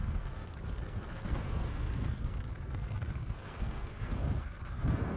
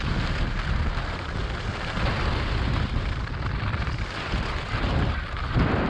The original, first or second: second